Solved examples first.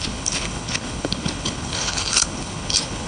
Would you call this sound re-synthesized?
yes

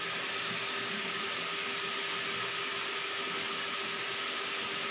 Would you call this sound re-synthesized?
no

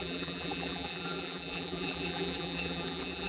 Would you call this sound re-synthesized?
yes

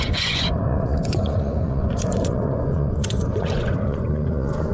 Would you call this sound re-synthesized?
yes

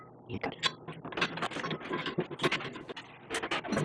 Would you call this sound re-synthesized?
no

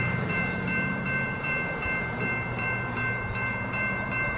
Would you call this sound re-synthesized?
yes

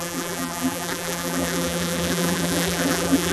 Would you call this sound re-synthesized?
yes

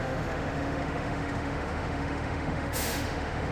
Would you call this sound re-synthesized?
yes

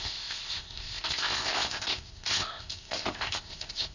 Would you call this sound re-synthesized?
yes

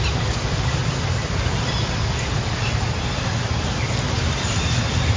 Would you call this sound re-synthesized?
no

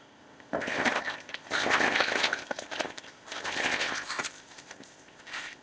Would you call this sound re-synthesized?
yes